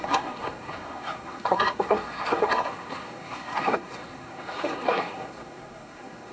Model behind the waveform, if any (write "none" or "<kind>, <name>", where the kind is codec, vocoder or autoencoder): codec, SNAC